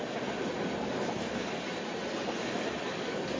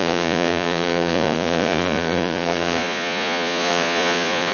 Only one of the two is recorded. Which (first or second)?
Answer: first